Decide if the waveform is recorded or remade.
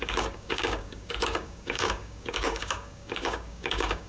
remade